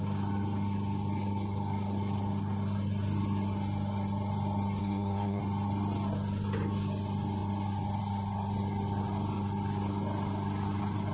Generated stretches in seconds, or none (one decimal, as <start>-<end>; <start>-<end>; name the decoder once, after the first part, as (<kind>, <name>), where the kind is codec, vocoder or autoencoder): 4.8-5.4 (codec, SNAC)